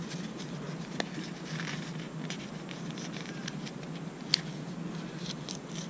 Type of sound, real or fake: real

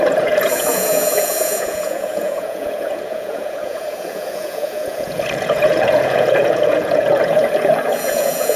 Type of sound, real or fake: fake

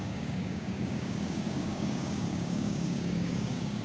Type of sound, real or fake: fake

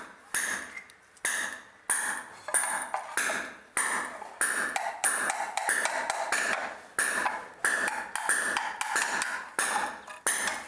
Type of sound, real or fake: real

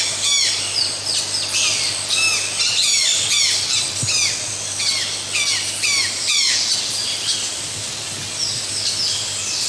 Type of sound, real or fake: real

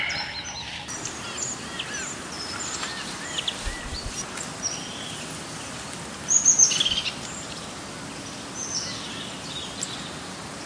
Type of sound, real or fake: real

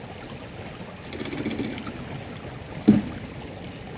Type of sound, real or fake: real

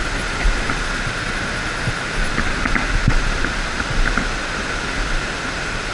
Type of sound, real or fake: real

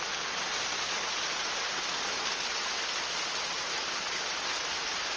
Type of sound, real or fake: real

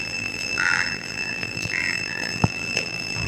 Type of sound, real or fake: fake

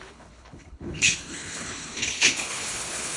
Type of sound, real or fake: fake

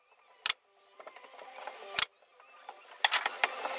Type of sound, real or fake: real